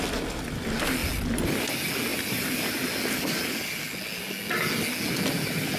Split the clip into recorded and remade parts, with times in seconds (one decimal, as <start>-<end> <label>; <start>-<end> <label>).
0.0-5.8 recorded